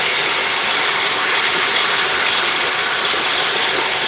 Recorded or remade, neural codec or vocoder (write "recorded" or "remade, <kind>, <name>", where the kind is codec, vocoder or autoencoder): recorded